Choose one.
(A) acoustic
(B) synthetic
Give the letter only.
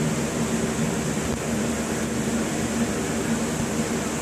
A